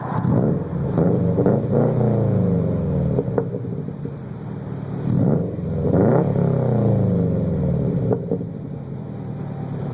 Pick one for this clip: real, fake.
real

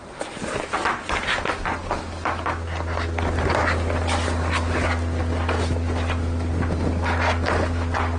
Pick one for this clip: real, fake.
real